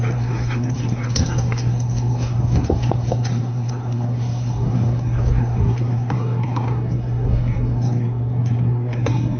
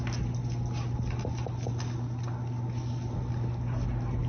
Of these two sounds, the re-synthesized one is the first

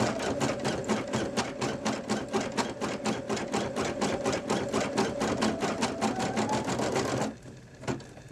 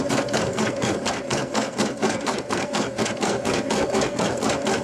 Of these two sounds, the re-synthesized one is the second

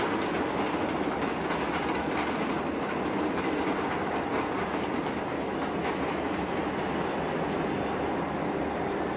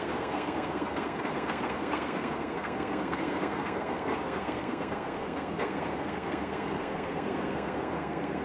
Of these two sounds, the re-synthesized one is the second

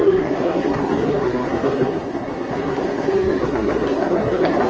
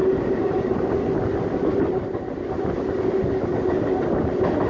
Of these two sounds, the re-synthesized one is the first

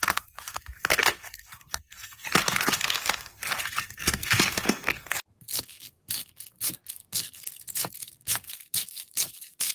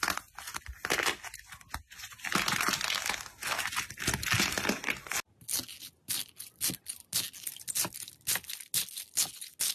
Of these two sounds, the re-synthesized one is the first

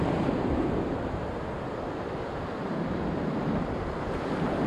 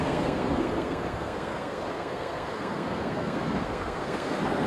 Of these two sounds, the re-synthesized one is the second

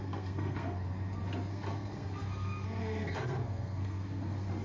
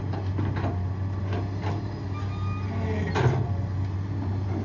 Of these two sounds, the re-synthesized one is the first